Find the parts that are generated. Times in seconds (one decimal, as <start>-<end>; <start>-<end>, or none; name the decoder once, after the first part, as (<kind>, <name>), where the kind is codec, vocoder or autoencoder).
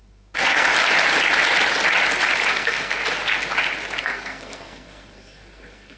0.0-0.7 (codec, SNAC); 2.5-3.0; 4.0-6.0